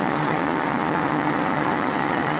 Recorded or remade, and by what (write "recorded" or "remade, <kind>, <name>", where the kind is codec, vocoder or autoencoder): remade, vocoder, Vocos